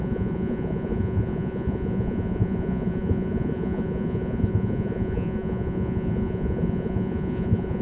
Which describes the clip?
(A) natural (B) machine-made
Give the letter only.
B